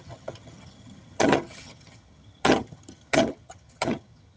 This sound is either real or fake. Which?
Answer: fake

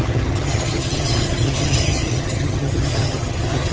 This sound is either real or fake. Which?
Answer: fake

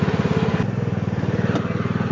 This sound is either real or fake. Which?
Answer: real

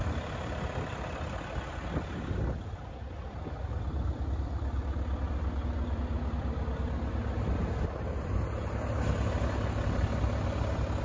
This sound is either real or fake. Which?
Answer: real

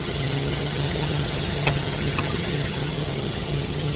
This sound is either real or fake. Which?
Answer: fake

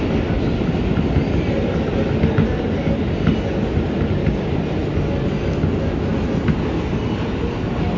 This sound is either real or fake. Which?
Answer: real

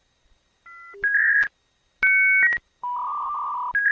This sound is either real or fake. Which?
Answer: real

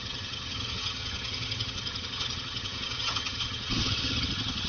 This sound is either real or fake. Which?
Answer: fake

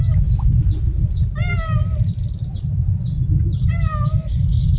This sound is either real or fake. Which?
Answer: real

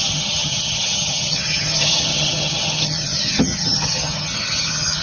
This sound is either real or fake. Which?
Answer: fake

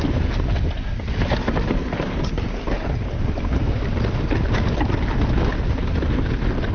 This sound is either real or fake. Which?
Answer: real